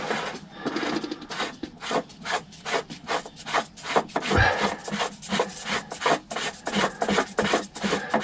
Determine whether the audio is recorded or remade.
recorded